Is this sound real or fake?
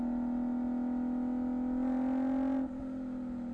real